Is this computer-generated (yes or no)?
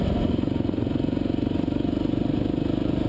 no